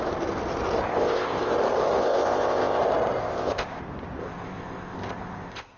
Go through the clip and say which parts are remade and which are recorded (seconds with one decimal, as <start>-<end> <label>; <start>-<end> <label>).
0.0-0.9 recorded; 0.9-1.5 remade; 1.5-2.0 recorded; 2.0-2.8 remade; 2.8-3.2 recorded; 3.2-3.8 remade; 3.8-4.2 recorded; 4.2-5.8 remade